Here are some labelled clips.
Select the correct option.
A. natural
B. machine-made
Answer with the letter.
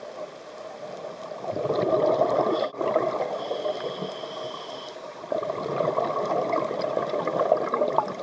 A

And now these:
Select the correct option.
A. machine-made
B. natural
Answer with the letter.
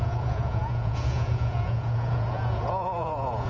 A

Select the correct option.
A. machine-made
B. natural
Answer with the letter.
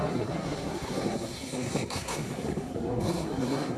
A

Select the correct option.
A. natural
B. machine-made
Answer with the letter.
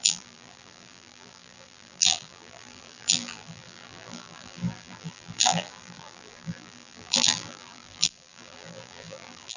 B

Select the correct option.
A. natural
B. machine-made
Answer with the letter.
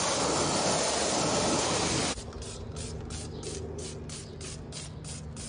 A